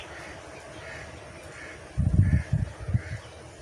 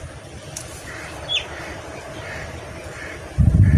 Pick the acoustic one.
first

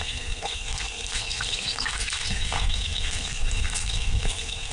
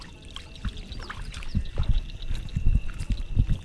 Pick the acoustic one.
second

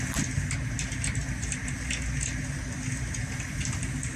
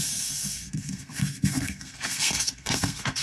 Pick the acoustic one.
first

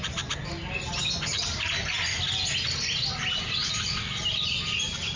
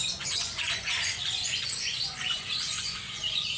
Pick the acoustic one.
first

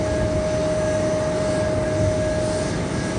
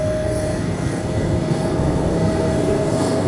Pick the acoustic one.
first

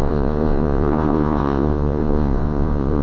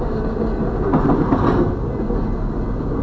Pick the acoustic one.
second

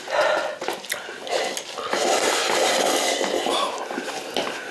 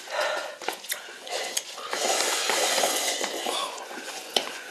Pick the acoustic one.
first